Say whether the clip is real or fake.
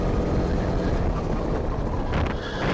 real